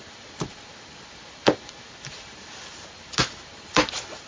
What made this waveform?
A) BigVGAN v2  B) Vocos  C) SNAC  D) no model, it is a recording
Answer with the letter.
D